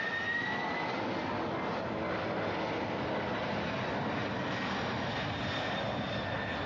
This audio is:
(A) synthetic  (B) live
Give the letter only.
B